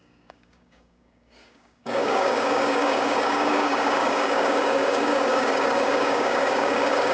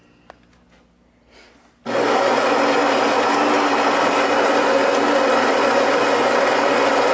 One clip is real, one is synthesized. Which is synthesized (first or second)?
first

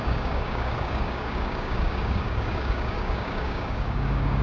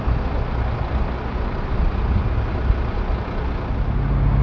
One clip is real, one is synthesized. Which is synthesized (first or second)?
first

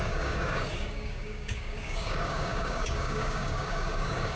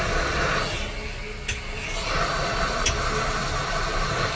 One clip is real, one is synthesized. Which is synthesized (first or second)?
first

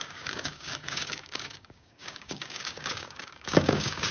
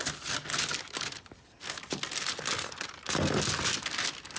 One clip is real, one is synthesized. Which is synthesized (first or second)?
first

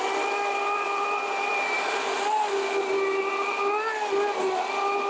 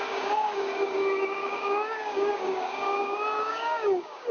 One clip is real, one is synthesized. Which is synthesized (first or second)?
second